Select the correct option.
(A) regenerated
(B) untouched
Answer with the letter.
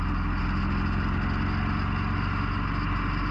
B